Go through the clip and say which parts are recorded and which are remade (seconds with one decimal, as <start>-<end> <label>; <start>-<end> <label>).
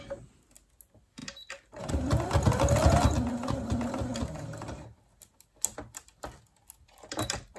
0.0-7.6 recorded